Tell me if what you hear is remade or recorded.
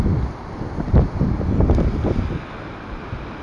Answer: recorded